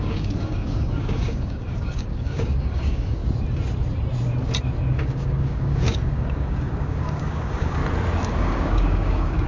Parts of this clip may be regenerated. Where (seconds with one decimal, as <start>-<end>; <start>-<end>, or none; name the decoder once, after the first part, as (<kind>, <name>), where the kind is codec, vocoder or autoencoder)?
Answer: 0.0-3.2 (codec, DAC); 5.0-7.8; 8.3-9.5